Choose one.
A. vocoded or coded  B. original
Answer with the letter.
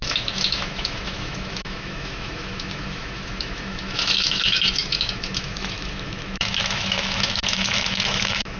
A